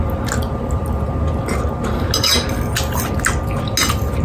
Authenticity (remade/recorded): recorded